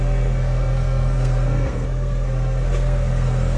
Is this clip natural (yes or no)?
no